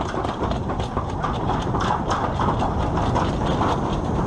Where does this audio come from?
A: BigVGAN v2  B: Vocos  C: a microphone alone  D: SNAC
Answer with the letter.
C